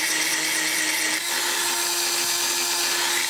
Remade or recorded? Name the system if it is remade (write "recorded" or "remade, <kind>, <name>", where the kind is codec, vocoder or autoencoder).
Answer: recorded